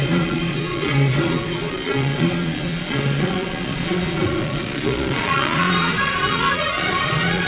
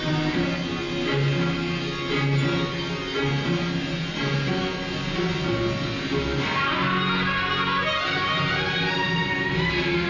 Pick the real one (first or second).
second